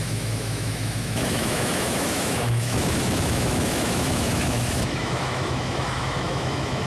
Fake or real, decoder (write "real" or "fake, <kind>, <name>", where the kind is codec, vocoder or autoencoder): fake, autoencoder, DAC-VAE